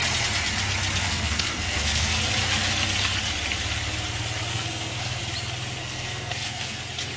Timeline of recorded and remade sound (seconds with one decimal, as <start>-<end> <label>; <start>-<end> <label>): 0.0-1.0 recorded; 1.0-2.2 remade; 2.2-4.5 recorded; 4.5-5.2 remade; 5.2-5.8 recorded; 5.8-6.8 remade; 6.8-7.2 recorded